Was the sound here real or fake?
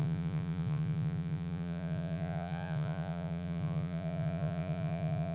fake